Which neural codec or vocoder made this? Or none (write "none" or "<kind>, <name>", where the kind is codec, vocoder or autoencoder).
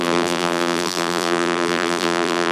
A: vocoder, BigVGAN v2